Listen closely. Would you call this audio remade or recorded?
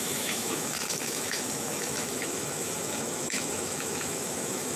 remade